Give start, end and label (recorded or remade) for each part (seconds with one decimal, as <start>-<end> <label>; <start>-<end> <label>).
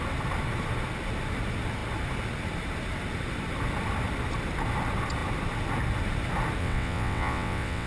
0.0-6.6 recorded; 6.6-7.9 remade